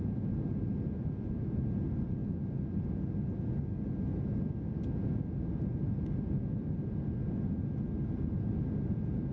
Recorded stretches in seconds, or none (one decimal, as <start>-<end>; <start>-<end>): 0.0-9.3